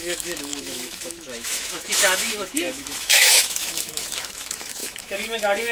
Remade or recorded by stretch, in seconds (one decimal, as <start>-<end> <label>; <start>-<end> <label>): 0.0-5.7 remade